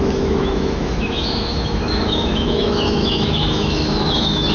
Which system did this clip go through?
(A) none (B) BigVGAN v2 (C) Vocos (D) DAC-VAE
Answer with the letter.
D